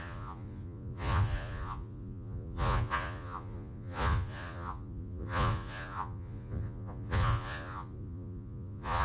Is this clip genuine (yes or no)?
no